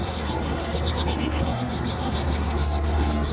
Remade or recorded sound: remade